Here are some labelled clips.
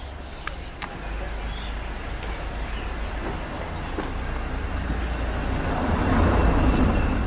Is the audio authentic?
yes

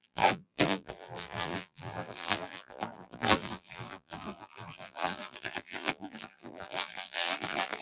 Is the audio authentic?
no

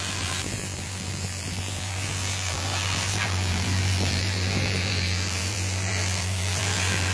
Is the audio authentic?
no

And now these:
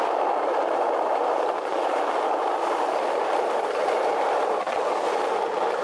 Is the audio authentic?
no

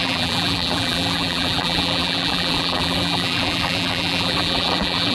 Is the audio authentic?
no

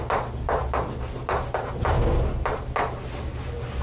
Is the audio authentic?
yes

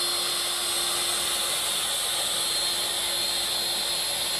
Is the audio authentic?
yes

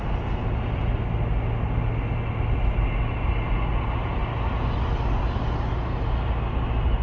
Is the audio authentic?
yes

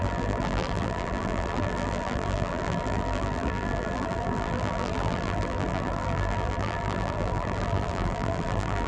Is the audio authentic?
no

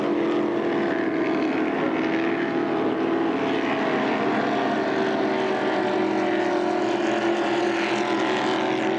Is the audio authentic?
yes